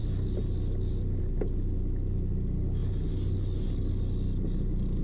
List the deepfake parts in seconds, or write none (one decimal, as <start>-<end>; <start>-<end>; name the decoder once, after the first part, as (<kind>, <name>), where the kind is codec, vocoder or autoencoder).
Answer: none